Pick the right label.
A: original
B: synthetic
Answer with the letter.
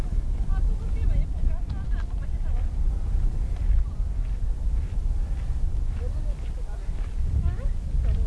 A